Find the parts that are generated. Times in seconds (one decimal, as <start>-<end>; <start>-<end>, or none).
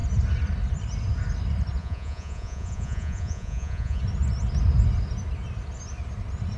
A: 1.8-4.0